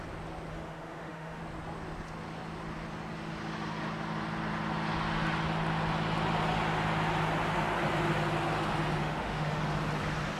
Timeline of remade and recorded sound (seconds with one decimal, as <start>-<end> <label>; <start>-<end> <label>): 0.0-0.5 recorded; 0.5-1.4 remade; 1.4-9.0 recorded; 9.0-9.6 remade; 9.6-10.4 recorded